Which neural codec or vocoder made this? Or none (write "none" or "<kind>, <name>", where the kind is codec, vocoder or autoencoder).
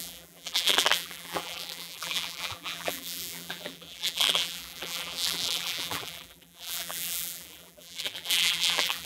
vocoder, BigVGAN v2